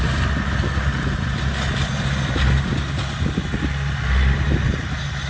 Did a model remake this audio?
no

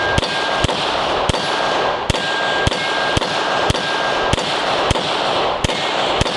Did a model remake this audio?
no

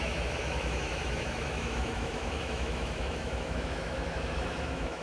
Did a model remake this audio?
yes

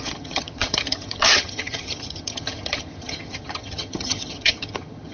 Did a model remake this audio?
yes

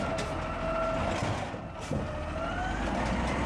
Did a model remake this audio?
no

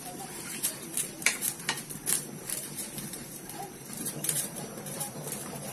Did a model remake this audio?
yes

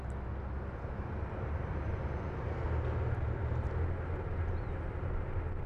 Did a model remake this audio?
no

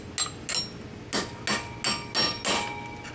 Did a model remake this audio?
no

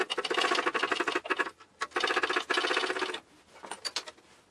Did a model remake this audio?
no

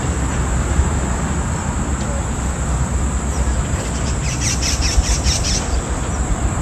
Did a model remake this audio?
yes